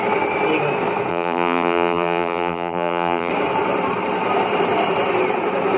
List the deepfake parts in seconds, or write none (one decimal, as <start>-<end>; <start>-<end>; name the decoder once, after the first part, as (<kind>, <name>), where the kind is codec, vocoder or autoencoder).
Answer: 1.1-3.3 (vocoder, BigVGAN v2)